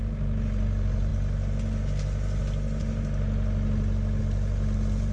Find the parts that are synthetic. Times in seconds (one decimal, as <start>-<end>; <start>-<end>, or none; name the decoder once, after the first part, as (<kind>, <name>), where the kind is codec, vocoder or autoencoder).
none